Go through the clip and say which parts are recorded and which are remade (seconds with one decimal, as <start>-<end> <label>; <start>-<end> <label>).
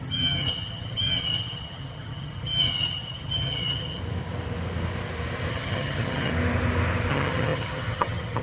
0.0-4.0 remade; 4.0-5.5 recorded; 5.5-6.3 remade; 6.3-7.1 recorded; 7.1-8.4 remade